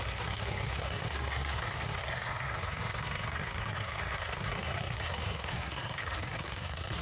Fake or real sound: fake